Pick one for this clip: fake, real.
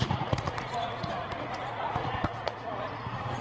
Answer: fake